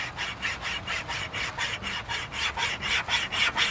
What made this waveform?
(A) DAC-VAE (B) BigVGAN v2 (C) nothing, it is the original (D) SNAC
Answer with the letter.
C